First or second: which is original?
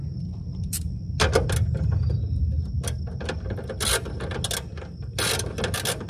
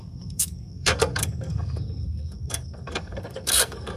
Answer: first